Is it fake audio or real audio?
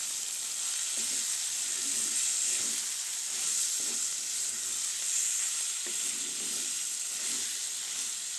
real